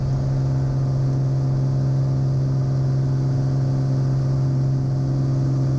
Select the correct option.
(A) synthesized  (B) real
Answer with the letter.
B